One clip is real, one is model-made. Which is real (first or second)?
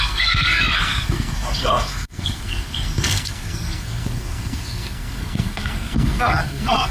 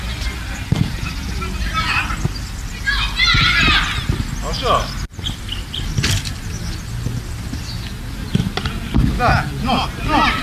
second